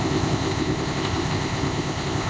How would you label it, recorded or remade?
remade